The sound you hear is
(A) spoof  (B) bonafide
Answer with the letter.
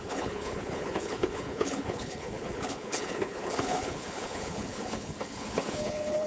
A